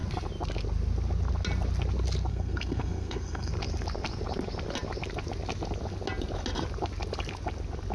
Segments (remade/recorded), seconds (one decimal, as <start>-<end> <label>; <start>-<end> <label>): 0.0-2.3 recorded; 2.3-3.5 remade; 3.5-7.9 recorded